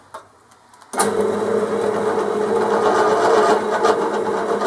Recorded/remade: recorded